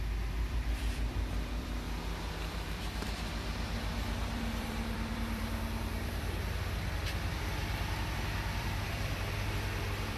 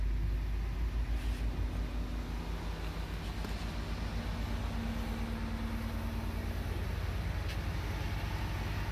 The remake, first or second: first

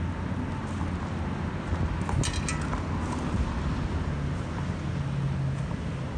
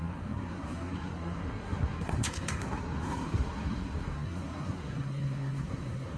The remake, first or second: second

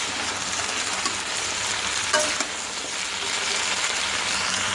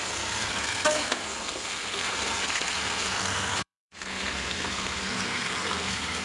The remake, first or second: second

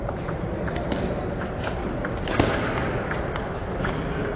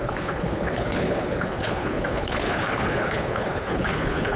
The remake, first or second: second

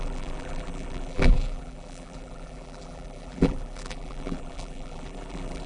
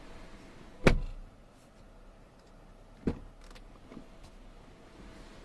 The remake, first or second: first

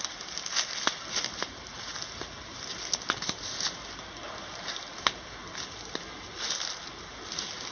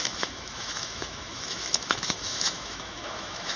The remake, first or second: second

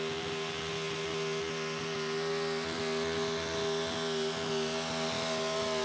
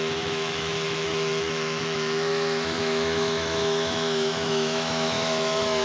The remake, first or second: second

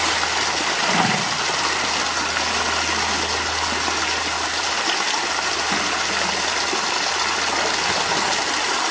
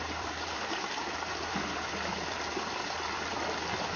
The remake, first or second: second